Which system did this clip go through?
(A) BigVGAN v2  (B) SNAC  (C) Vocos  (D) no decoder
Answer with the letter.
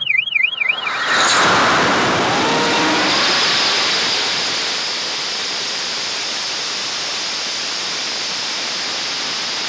A